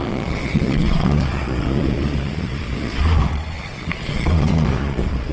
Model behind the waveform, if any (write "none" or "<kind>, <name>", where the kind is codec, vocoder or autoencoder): vocoder, Vocos